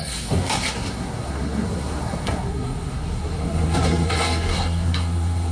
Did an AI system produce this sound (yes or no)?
yes